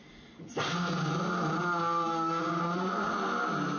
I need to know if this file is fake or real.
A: real